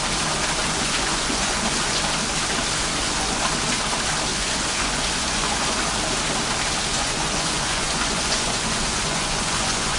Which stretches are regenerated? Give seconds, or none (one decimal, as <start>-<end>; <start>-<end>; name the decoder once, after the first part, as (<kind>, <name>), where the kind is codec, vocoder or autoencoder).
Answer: 0.6-2.0 (vocoder, Vocos); 2.8-3.4; 4.3-5.8; 6.9-10.0